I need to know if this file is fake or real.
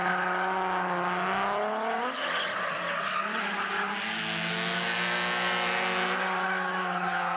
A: real